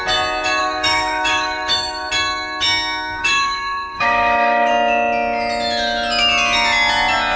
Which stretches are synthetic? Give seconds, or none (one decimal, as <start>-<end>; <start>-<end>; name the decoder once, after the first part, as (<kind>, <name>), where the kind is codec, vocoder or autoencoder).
0.6-2.1 (autoencoder, DAC-VAE); 3.2-4.7